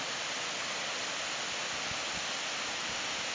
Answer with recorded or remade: recorded